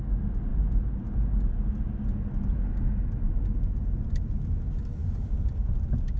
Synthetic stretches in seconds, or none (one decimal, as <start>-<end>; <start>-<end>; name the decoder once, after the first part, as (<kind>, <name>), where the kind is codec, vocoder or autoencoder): 5.0-6.2 (vocoder, BigVGAN v2)